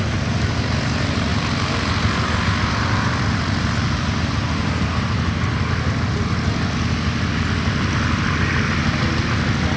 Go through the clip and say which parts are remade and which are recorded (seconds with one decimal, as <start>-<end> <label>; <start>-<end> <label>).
0.0-1.3 recorded; 1.3-3.3 remade; 3.3-9.8 recorded